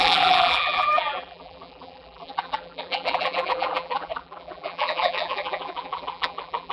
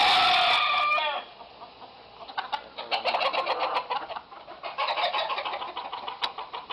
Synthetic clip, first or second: first